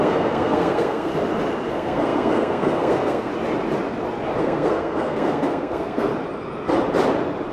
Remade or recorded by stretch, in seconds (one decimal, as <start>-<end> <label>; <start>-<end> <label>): 0.0-1.1 remade; 1.1-1.7 recorded; 1.7-3.3 remade; 3.3-4.4 recorded; 4.4-6.1 remade; 6.1-7.5 recorded